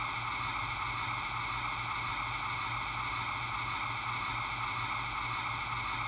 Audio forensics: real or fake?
real